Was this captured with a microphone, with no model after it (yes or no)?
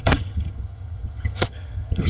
no